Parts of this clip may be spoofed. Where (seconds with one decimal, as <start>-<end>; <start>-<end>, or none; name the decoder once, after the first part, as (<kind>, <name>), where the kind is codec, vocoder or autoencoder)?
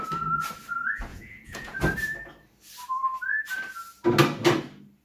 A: 1.1-1.8 (vocoder, Vocos)